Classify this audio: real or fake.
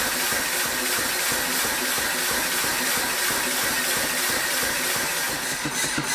real